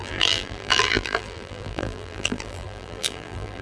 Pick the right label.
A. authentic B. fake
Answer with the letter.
B